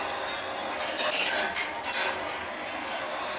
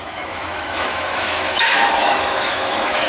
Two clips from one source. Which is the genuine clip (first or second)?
first